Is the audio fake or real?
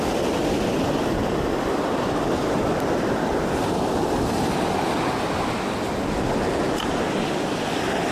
real